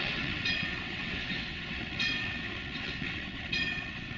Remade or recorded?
remade